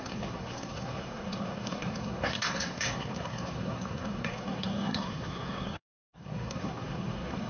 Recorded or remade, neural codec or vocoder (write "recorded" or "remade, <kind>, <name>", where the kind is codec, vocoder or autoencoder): remade, codec, SNAC